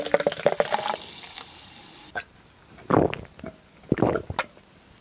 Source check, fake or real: real